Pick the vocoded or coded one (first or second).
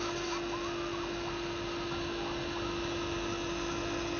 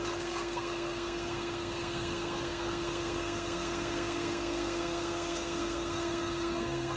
second